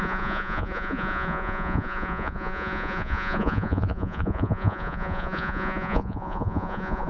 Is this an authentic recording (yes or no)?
no